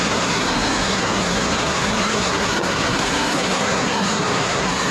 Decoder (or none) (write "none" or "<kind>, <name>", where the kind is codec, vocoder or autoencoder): codec, SNAC